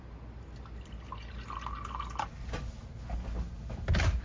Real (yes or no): yes